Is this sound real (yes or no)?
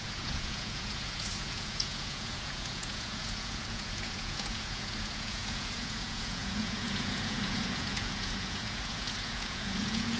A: no